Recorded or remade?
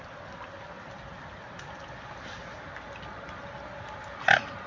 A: recorded